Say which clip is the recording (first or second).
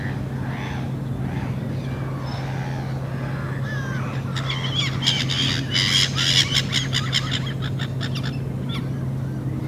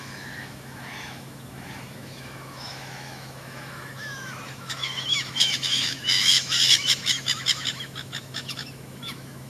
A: first